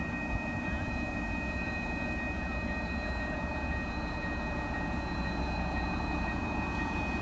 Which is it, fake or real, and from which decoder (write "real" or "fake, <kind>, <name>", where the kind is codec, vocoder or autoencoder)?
fake, vocoder, Vocos